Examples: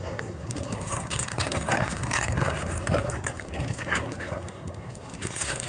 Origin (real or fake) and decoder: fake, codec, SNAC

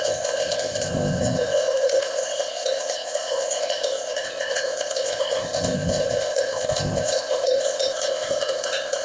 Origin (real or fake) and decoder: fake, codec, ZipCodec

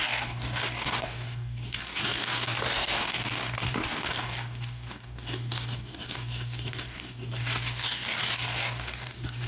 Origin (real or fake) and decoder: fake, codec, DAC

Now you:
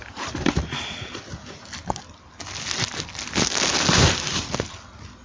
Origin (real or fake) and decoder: real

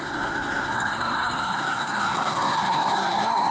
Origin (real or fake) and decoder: fake, codec, SNAC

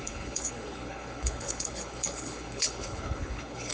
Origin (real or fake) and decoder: fake, codec, HILCodec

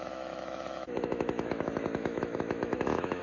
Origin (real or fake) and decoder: fake, autoencoder, DAC-VAE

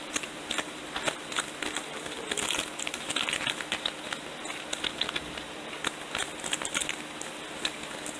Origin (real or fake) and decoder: real